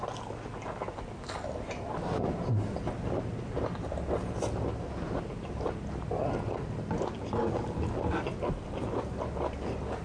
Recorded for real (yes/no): yes